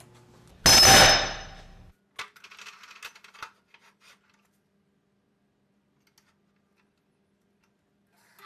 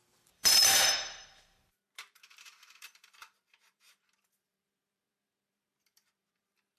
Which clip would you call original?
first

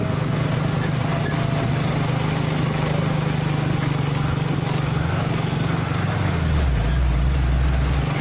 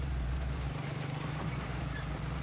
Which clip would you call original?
first